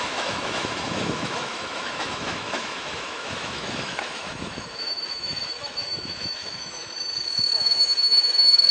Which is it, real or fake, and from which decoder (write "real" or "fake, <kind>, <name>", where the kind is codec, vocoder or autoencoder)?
fake, autoencoder, DAC-VAE